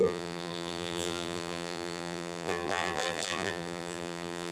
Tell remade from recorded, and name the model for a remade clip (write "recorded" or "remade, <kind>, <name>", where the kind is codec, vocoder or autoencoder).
remade, vocoder, BigVGAN v2